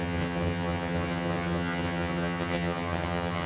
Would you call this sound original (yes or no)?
no